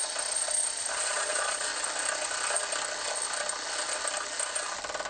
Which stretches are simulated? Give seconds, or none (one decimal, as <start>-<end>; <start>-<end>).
0.9-1.7